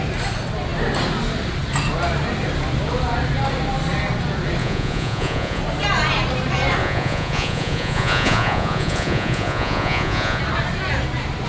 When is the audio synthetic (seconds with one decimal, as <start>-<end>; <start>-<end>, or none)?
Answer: 4.6-5.6; 6.8-10.4